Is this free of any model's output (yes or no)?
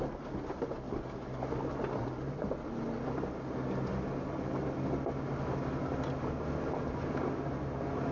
yes